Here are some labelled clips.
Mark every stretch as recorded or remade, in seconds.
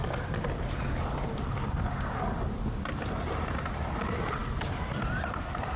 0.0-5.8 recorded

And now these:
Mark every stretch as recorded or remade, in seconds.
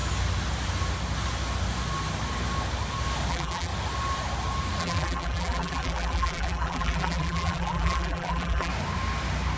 0.0-3.3 recorded; 3.3-3.7 remade; 3.7-4.8 recorded; 4.8-8.7 remade; 8.7-9.6 recorded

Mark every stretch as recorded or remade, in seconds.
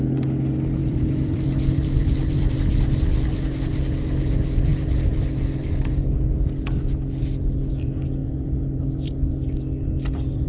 0.0-0.8 recorded; 0.8-2.5 remade; 2.5-8.2 recorded; 8.2-9.1 remade; 9.1-10.5 recorded